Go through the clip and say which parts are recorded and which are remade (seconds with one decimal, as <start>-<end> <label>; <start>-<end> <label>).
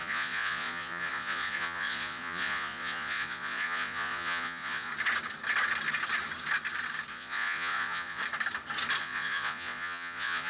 0.0-4.9 remade; 4.9-7.1 recorded; 7.1-8.2 remade; 8.2-9.0 recorded; 9.0-10.5 remade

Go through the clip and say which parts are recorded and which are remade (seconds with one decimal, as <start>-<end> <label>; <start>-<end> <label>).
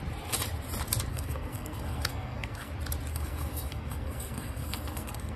0.0-1.1 recorded; 1.1-2.7 remade; 2.7-3.1 recorded; 3.1-5.4 remade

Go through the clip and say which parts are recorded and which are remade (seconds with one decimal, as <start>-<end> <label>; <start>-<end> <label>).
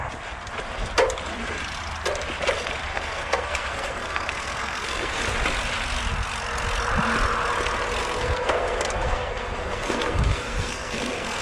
0.0-2.9 recorded; 2.9-5.2 remade; 5.2-8.0 recorded; 8.0-11.4 remade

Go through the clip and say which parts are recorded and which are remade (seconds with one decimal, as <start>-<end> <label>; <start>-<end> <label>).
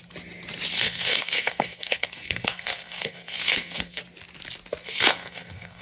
0.0-0.7 recorded; 0.7-4.0 remade; 4.0-4.8 recorded; 4.8-5.8 remade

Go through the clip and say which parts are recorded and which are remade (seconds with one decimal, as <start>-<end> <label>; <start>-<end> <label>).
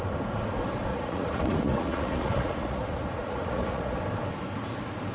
0.0-0.9 recorded; 0.9-4.0 remade; 4.0-5.1 recorded